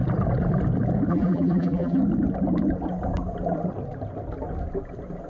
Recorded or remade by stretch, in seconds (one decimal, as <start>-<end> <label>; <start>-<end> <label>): 0.0-1.1 recorded; 1.1-2.0 remade; 2.0-5.3 recorded